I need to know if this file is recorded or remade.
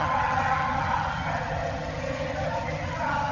remade